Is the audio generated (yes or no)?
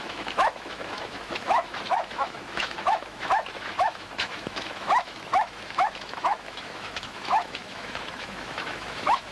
yes